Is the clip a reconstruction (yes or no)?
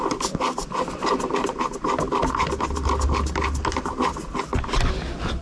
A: no